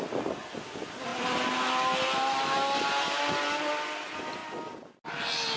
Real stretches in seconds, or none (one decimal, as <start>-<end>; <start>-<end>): 0.0-5.6